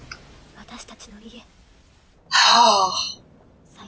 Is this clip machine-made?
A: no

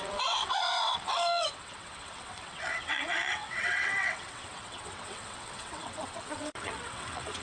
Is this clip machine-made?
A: yes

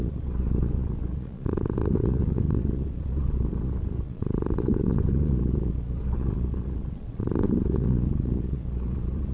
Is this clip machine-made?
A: yes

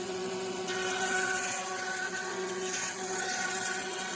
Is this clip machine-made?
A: yes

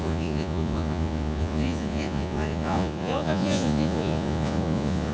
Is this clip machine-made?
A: yes